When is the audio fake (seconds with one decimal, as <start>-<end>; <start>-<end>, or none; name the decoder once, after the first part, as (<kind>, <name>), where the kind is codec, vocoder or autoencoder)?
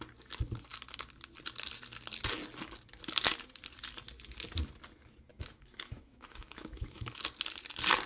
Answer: 5.3-7.2 (autoencoder, DAC-VAE)